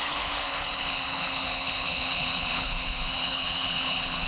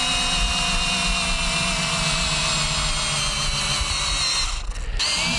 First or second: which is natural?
second